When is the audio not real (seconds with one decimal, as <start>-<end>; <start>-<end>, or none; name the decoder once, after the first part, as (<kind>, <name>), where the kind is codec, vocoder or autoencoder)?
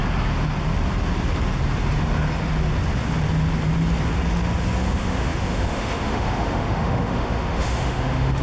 4.8-8.4 (autoencoder, DAC-VAE)